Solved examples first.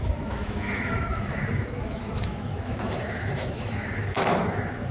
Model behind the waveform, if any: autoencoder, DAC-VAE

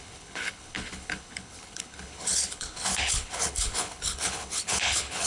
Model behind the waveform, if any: codec, HILCodec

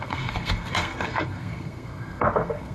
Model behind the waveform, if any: codec, SNAC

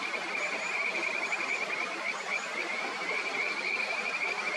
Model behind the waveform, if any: vocoder, BigVGAN v2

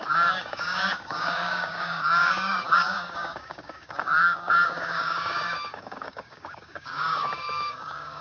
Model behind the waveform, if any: codec, DAC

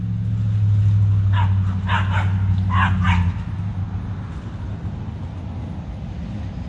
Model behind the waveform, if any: none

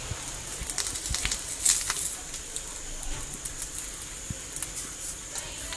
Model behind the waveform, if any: none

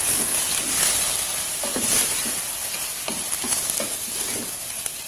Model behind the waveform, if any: none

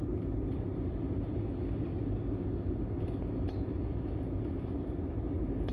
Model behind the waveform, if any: none